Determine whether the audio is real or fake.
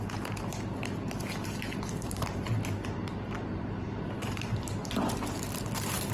fake